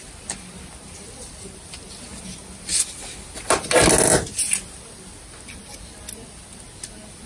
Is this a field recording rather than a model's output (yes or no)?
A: yes